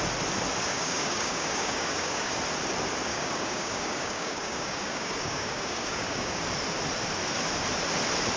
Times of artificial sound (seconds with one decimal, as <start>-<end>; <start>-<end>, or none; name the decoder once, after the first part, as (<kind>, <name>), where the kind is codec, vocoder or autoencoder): 0.7-2.4 (codec, DAC); 3.1-6.4